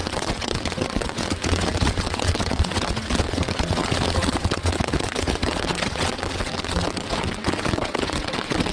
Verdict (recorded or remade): remade